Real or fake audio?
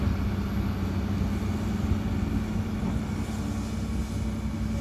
real